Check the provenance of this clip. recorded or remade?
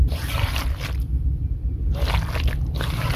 recorded